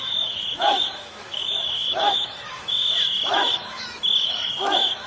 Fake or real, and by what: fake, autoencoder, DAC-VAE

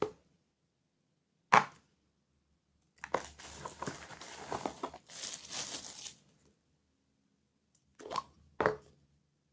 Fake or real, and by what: real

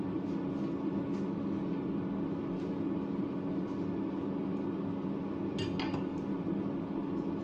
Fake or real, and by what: real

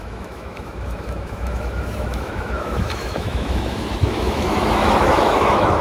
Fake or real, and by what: fake, autoencoder, DAC-VAE